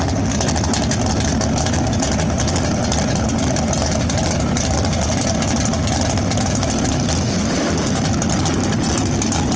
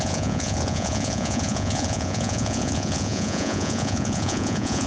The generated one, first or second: second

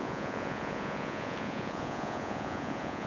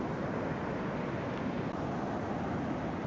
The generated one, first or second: first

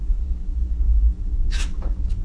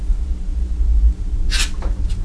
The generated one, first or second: first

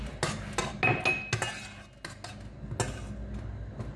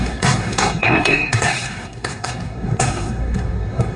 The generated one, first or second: second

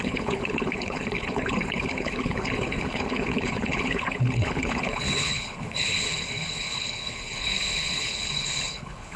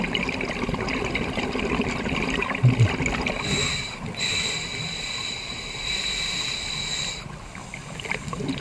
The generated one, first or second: first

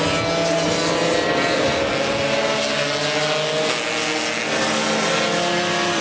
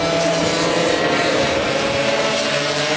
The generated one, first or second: second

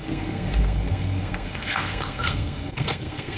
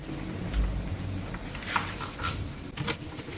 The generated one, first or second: first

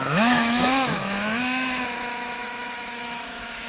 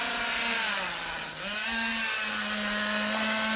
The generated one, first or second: first